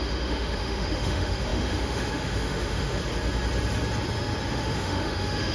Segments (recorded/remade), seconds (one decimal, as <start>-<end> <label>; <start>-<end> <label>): 0.0-3.0 remade; 3.0-4.5 recorded; 4.5-5.5 remade

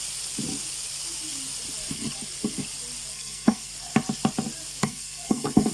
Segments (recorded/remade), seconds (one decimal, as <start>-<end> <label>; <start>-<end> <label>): 0.0-3.1 recorded; 3.1-3.7 remade; 3.7-4.8 recorded; 4.8-5.7 remade